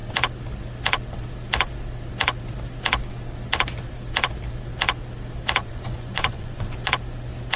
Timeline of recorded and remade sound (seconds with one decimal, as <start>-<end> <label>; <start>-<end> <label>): 0.0-5.6 recorded; 5.6-6.9 remade; 6.9-7.6 recorded